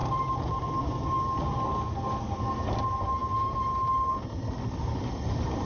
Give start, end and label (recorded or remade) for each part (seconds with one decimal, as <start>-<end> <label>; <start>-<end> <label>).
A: 0.0-5.7 recorded